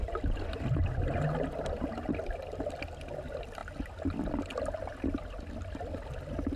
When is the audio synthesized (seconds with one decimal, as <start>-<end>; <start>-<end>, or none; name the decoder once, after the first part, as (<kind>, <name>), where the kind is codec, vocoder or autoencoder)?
none